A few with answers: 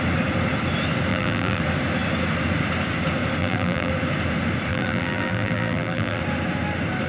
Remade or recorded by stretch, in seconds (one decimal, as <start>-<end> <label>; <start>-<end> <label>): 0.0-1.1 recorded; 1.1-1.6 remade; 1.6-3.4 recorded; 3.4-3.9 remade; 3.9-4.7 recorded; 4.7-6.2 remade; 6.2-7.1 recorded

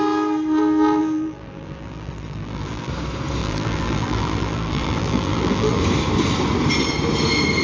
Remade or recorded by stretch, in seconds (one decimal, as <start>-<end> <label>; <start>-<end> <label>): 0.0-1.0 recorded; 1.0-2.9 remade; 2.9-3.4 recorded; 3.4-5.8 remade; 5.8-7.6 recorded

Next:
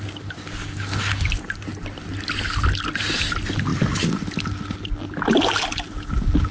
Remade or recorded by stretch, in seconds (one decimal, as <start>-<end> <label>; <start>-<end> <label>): 0.0-6.5 recorded

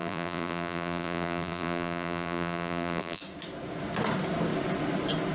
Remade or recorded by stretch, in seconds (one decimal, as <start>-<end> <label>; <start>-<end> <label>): 0.0-3.2 remade; 3.2-5.3 recorded

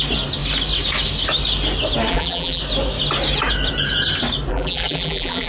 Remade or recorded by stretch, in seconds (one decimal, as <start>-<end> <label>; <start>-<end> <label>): 0.0-2.1 recorded; 2.1-2.6 remade; 2.6-4.5 recorded; 4.5-5.5 remade

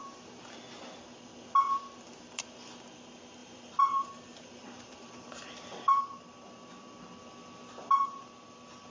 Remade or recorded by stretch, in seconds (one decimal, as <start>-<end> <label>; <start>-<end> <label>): 0.0-3.4 recorded; 3.4-6.0 remade; 6.0-8.9 recorded

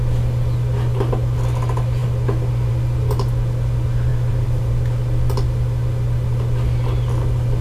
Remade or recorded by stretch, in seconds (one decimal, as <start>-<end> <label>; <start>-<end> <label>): 0.0-4.1 recorded; 4.1-4.7 remade; 4.7-7.6 recorded

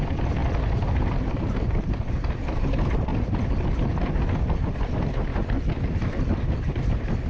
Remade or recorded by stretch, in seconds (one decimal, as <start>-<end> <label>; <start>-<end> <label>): 0.0-0.4 remade; 0.4-1.1 recorded; 1.1-3.1 remade; 3.1-4.6 recorded; 4.6-5.3 remade; 5.3-6.7 recorded; 6.7-7.3 remade